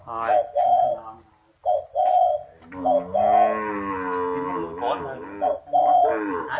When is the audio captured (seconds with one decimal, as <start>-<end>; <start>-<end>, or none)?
0.0-6.6